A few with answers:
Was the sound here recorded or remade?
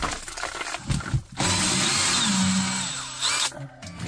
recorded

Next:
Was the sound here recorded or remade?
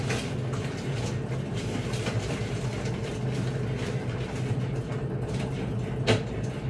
recorded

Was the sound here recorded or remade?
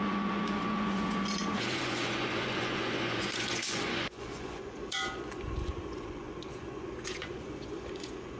remade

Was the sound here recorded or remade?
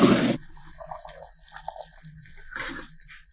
recorded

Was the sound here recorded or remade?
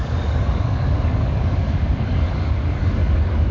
remade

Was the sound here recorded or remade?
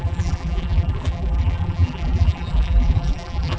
remade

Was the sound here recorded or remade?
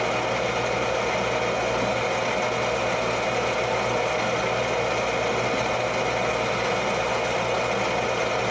recorded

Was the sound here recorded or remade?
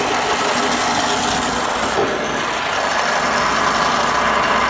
recorded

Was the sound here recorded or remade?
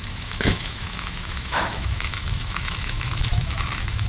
remade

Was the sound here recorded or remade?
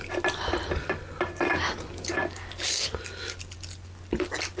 recorded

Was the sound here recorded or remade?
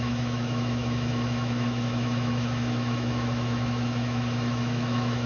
remade